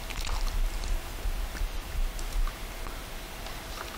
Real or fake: real